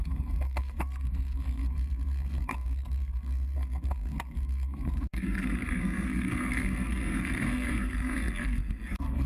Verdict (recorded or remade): remade